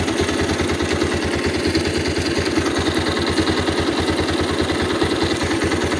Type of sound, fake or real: real